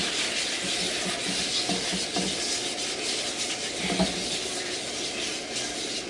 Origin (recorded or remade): recorded